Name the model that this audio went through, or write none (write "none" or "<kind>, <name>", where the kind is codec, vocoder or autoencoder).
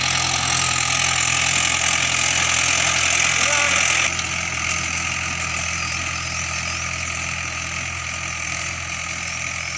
none